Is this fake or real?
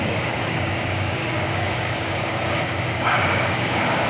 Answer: fake